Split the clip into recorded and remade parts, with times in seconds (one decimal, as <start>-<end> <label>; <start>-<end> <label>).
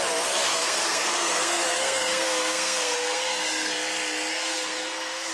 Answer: 0.0-0.5 recorded; 0.5-3.7 remade; 3.7-4.3 recorded; 4.3-5.3 remade